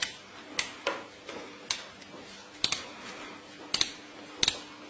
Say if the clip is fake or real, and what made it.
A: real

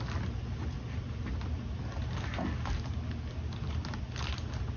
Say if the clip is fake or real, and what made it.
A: real